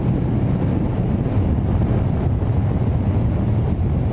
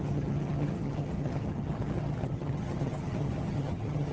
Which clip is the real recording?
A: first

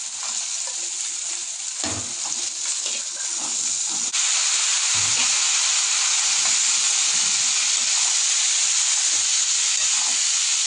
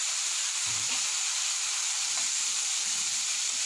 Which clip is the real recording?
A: first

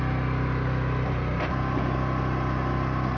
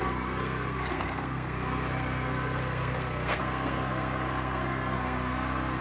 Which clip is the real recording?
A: first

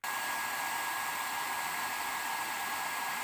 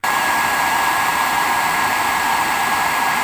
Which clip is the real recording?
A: first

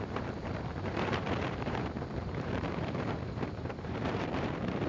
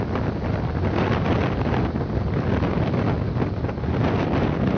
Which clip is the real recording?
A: second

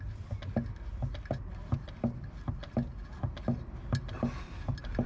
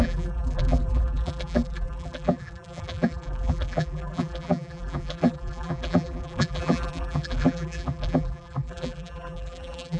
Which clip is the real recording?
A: first